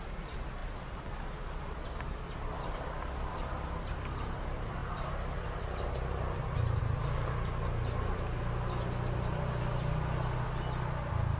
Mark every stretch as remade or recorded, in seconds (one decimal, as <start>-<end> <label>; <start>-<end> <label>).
0.0-11.4 recorded